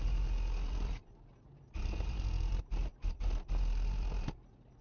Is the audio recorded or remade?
recorded